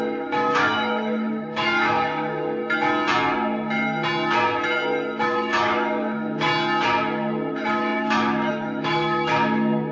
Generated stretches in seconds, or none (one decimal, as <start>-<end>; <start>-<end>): 0.0-2.6; 5.2-6.5; 7.5-9.9